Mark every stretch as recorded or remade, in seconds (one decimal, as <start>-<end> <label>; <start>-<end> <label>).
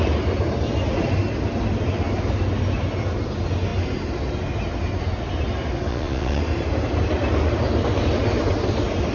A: 0.0-5.9 recorded; 5.9-6.4 remade; 6.4-9.1 recorded